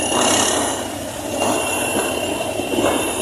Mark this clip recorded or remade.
recorded